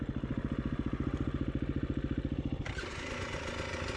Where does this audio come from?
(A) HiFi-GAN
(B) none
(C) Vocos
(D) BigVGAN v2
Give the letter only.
B